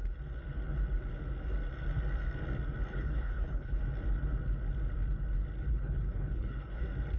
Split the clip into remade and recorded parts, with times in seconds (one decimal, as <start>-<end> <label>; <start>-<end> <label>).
0.0-2.9 recorded; 2.9-3.8 remade; 3.8-5.7 recorded; 5.7-6.8 remade; 6.8-7.2 recorded